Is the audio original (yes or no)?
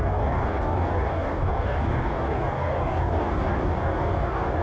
no